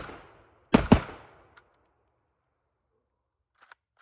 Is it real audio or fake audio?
real